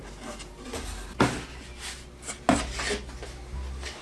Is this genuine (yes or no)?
yes